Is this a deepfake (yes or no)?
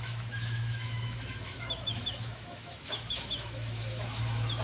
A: yes